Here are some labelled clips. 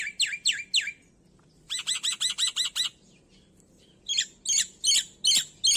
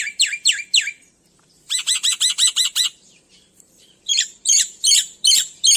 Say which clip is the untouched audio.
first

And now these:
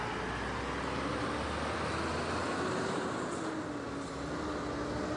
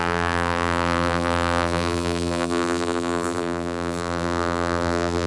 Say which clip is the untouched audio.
first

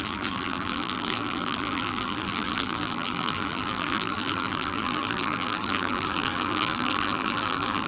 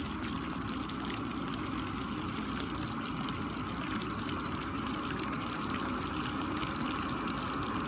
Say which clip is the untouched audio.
second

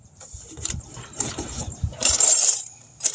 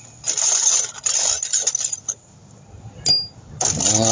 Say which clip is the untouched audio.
second